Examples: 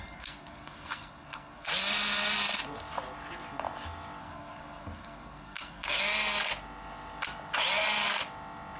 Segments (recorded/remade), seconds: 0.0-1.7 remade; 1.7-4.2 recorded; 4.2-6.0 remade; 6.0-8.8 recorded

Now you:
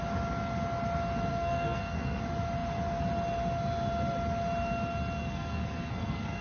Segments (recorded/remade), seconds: 0.0-1.3 recorded; 1.3-2.2 remade; 2.2-5.2 recorded; 5.2-6.4 remade

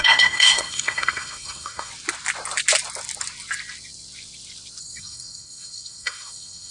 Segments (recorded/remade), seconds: 0.0-1.9 remade; 1.9-4.8 recorded; 4.8-6.7 remade

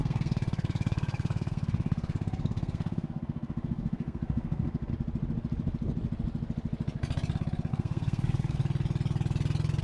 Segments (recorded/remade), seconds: 0.0-4.9 remade; 4.9-7.7 recorded; 7.7-8.6 remade; 8.6-9.8 recorded

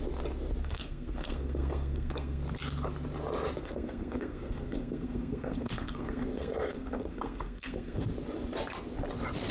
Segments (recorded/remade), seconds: 0.0-0.6 recorded; 0.6-2.4 remade; 2.4-3.6 recorded; 3.6-8.0 remade; 8.0-9.5 recorded

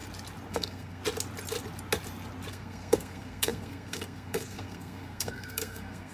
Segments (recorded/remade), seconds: 0.0-0.5 recorded; 0.5-1.0 remade; 1.0-2.5 recorded; 2.5-6.1 remade

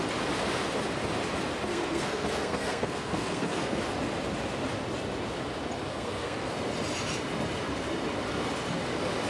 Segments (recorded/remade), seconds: 0.0-1.7 recorded; 1.7-3.8 remade; 3.8-5.9 recorded; 5.9-6.5 remade; 6.5-9.3 recorded

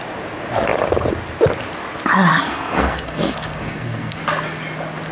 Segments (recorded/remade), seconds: 0.0-2.3 recorded; 2.3-4.2 remade; 4.2-5.1 recorded